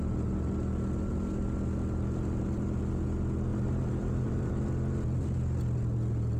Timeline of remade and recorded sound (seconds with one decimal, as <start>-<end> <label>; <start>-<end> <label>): 0.0-3.5 recorded; 3.5-4.5 remade; 4.5-6.4 recorded